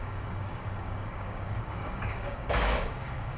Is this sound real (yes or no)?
no